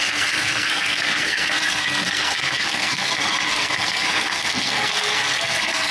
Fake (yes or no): yes